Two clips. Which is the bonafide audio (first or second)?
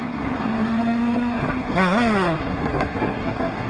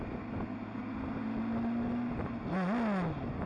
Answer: second